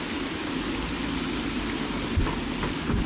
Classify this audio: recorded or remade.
recorded